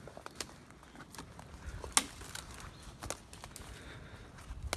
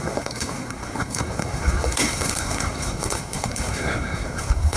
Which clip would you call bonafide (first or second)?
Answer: first